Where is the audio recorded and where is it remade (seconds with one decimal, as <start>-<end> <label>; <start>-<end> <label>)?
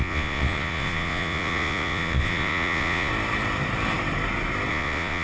0.0-3.1 remade; 3.1-4.7 recorded; 4.7-5.2 remade